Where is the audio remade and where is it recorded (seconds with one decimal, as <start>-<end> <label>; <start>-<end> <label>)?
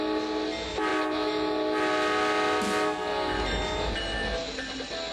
0.0-5.1 recorded